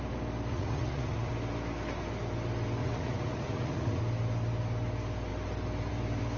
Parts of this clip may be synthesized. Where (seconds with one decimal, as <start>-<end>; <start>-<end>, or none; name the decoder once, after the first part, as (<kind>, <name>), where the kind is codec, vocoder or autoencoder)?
0.5-1.3 (vocoder, Vocos); 2.8-4.0

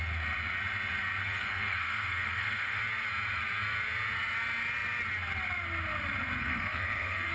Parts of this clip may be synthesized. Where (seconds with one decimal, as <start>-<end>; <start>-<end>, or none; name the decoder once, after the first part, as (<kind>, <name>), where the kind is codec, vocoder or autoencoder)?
1.2-2.8 (codec, SNAC); 6.4-7.3

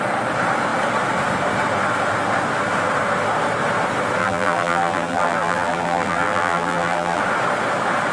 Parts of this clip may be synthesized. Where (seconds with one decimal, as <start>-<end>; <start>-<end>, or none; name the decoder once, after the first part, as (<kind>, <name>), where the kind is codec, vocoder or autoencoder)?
4.2-7.2 (vocoder, BigVGAN v2)

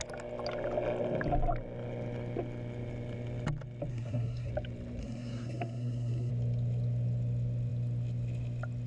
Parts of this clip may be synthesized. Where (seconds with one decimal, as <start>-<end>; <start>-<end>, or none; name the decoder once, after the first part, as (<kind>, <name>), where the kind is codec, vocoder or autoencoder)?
3.9-4.5 (codec, SNAC); 5.0-6.3

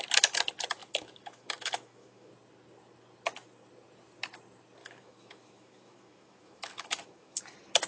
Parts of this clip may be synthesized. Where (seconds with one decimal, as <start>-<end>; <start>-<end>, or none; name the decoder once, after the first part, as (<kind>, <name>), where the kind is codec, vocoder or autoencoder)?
0.8-2.3 (autoencoder, DAC-VAE); 4.8-7.4

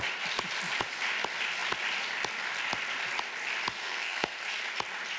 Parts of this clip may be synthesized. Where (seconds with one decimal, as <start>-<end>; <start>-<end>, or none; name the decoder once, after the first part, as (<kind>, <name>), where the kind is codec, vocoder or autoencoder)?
3.8-4.5 (codec, SNAC)

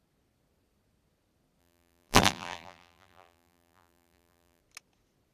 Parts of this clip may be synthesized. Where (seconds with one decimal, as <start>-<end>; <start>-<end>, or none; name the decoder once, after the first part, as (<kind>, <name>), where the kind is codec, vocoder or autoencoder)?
1.6-4.6 (vocoder, BigVGAN v2)

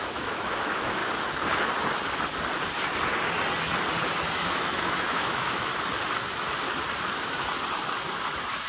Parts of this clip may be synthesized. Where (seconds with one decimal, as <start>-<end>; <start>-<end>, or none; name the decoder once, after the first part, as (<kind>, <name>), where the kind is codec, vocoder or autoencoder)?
0.0-1.0 (autoencoder, DAC-VAE); 4.5-5.7